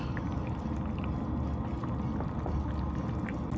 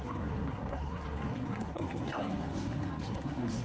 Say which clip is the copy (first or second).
second